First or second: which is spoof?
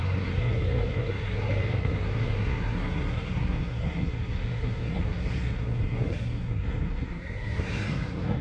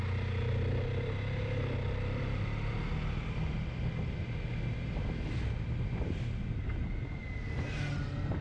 first